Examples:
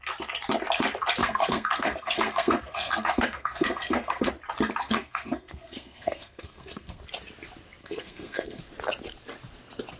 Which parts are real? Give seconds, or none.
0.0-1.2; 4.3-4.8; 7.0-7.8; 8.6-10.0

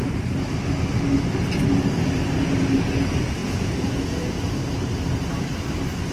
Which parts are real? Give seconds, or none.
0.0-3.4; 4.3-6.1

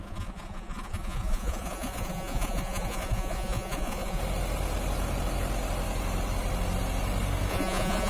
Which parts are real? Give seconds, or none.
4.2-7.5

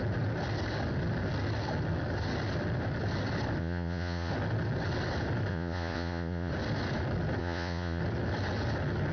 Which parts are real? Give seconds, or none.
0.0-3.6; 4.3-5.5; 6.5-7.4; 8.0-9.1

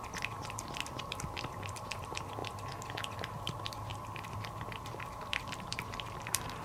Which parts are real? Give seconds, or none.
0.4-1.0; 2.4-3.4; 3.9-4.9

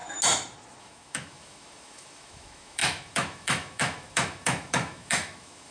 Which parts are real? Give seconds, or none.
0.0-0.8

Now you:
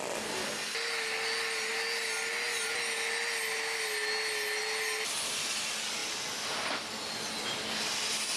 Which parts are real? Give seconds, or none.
0.0-8.4